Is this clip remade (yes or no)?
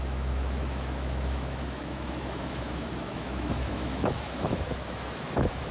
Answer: yes